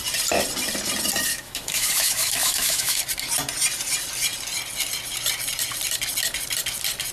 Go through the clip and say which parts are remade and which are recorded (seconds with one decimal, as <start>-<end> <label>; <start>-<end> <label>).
0.0-1.3 recorded; 1.3-3.0 remade; 3.0-7.1 recorded